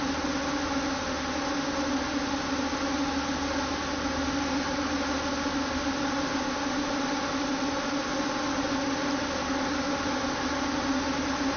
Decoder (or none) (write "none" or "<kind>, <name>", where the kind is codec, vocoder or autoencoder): none